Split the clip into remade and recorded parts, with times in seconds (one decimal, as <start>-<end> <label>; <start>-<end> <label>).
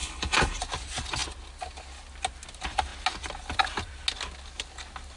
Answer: 0.0-0.6 remade; 0.6-5.2 recorded